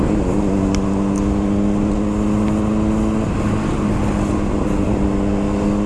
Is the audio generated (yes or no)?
no